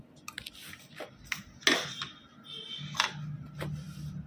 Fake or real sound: real